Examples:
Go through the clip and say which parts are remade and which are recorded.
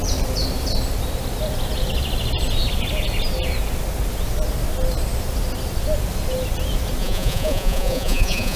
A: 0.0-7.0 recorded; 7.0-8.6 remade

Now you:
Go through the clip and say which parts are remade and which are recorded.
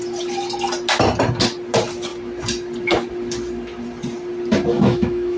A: 0.0-4.7 recorded; 4.7-5.4 remade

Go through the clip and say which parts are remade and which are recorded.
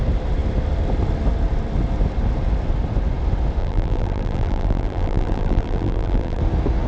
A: 0.0-3.6 recorded; 3.6-6.4 remade; 6.4-6.9 recorded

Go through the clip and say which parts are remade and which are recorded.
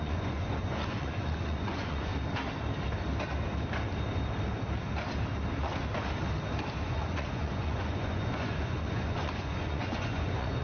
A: 0.0-2.1 remade; 2.1-6.8 recorded; 6.8-10.6 remade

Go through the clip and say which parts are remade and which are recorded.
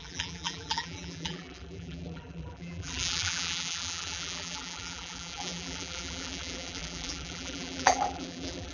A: 0.0-8.7 remade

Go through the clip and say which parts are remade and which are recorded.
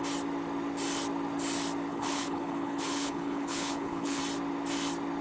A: 0.0-1.9 recorded; 1.9-4.2 remade; 4.2-5.2 recorded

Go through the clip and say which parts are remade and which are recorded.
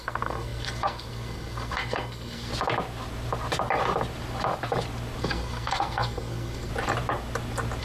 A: 0.0-2.5 remade; 2.5-5.2 recorded; 5.2-6.7 remade; 6.7-7.8 recorded